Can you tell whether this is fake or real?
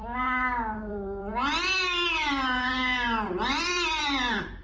fake